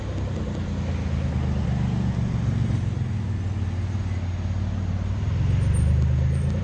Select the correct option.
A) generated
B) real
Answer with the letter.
B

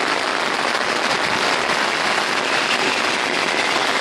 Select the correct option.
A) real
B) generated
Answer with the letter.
A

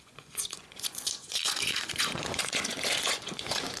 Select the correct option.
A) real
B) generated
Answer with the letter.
B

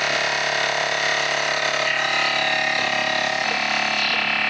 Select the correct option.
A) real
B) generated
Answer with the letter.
B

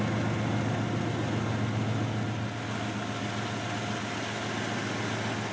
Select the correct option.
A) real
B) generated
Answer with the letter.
A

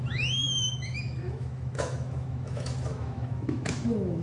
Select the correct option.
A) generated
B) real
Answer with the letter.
A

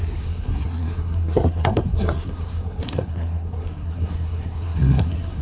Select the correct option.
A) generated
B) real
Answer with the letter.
A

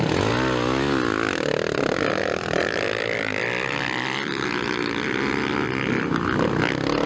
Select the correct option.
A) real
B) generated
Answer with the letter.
A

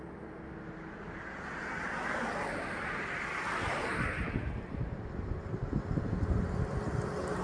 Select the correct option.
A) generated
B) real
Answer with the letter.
B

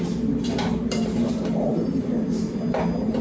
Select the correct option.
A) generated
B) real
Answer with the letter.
B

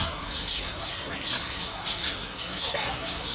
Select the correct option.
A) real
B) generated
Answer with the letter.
B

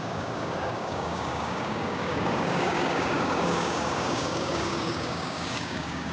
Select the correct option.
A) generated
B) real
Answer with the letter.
A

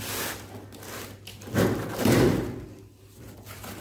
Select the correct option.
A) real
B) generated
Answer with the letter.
A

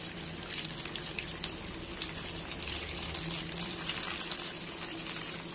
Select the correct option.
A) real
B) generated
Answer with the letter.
A